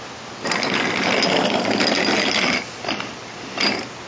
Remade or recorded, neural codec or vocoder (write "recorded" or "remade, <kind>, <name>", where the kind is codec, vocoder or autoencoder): recorded